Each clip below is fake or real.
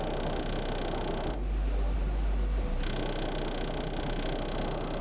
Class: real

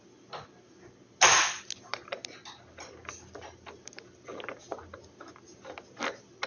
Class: real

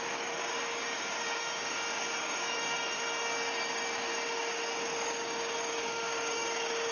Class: fake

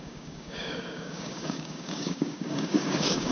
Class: fake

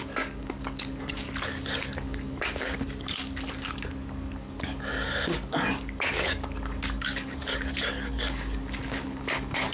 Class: fake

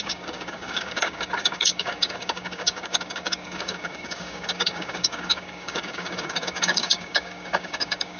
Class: fake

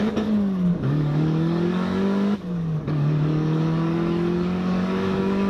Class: fake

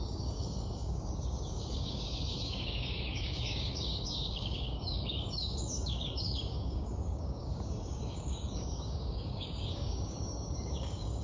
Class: fake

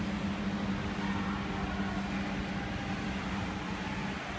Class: real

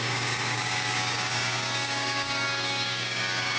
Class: fake